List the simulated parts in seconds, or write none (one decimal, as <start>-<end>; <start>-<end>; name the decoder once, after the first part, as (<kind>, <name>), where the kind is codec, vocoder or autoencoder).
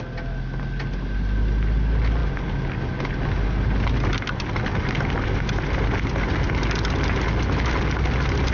none